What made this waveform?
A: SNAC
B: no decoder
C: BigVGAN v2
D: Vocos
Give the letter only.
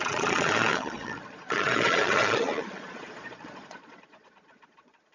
D